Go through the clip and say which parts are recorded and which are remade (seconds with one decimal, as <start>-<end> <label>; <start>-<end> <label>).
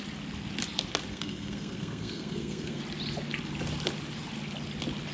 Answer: 0.0-1.1 recorded; 1.1-2.8 remade; 2.8-5.1 recorded